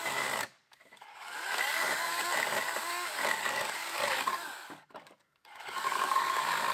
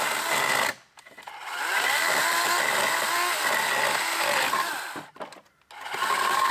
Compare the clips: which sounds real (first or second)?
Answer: second